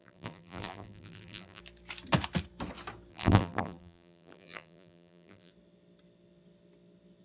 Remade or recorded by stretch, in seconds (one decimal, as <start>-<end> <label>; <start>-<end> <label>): 0.0-1.6 remade; 1.6-3.1 recorded; 3.1-5.5 remade; 5.5-7.2 recorded